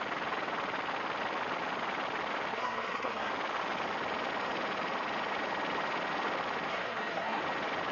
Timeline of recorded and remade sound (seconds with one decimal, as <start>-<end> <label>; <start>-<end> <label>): 0.0-2.5 recorded; 2.5-3.3 remade; 3.3-6.7 recorded; 6.7-7.4 remade; 7.4-7.9 recorded